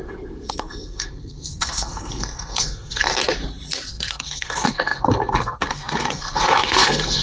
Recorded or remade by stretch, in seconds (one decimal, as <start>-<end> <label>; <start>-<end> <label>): 0.0-3.1 remade; 3.1-3.9 recorded; 3.9-7.2 remade